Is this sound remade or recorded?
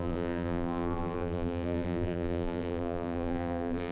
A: remade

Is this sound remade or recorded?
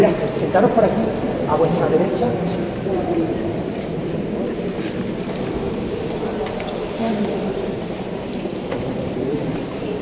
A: remade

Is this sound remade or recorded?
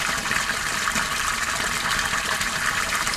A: remade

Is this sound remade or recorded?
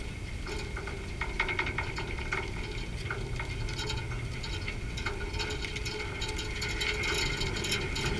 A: recorded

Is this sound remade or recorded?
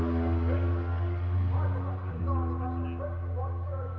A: recorded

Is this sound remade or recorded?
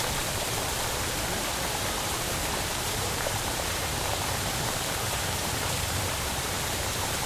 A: remade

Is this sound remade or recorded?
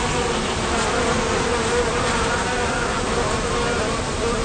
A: recorded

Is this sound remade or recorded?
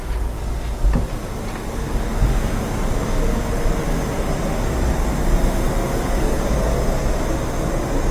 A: recorded